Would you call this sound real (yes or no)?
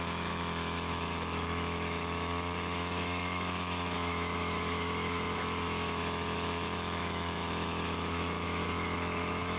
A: no